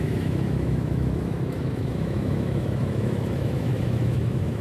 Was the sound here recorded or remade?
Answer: remade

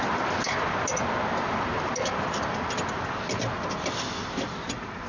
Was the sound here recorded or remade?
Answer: recorded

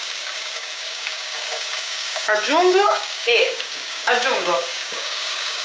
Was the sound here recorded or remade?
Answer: remade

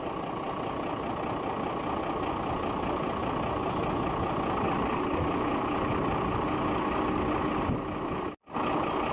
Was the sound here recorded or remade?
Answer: recorded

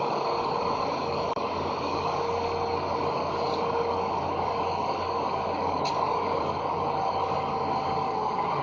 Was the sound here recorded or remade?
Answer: remade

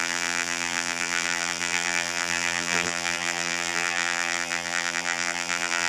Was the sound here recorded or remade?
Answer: remade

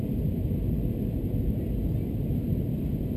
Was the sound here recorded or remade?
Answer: recorded